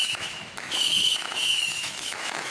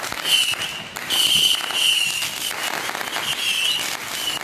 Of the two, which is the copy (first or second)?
first